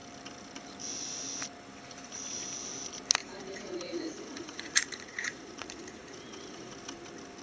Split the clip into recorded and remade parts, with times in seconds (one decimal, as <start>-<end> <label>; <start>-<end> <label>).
0.0-3.2 recorded; 3.2-6.7 remade; 6.7-7.4 recorded